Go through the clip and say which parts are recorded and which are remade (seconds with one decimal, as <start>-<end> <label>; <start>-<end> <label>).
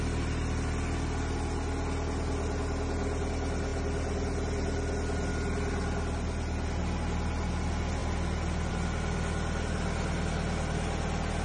0.0-11.4 recorded